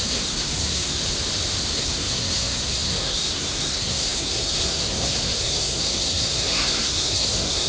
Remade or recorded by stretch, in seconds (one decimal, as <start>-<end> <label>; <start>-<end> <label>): 0.0-1.0 remade; 1.0-1.6 recorded; 1.6-7.7 remade

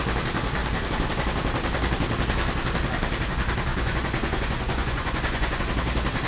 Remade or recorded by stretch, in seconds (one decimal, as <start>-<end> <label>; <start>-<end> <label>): 0.0-3.7 recorded; 3.7-5.6 remade; 5.6-6.3 recorded

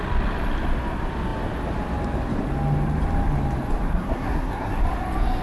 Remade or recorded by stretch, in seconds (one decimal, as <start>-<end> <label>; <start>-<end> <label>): 0.0-3.9 recorded; 3.9-4.8 remade; 4.8-5.4 recorded

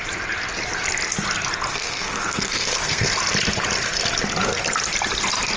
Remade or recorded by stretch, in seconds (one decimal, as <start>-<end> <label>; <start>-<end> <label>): 0.0-1.7 recorded; 1.7-3.1 remade; 3.1-5.6 recorded

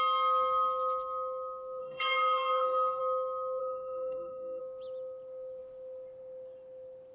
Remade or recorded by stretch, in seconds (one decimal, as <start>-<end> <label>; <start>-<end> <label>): 0.0-1.8 recorded; 1.8-3.0 remade; 3.0-3.6 recorded; 3.6-4.6 remade; 4.6-7.1 recorded

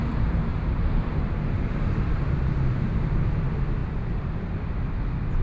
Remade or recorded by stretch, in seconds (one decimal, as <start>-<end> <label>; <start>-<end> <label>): 0.0-0.5 recorded; 0.5-3.1 remade; 3.1-3.8 recorded; 3.8-5.4 remade

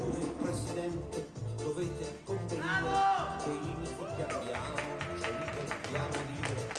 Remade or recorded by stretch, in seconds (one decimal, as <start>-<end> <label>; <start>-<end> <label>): 0.0-1.4 remade; 1.4-5.5 recorded; 5.5-6.8 remade